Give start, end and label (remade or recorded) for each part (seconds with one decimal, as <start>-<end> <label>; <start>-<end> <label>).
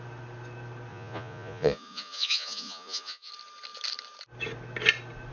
0.0-0.9 recorded; 0.9-3.3 remade; 3.3-5.3 recorded